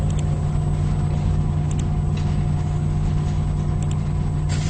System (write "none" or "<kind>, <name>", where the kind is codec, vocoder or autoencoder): none